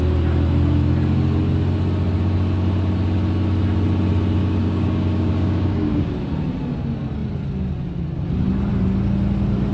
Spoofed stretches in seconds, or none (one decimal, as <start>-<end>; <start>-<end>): 4.4-6.1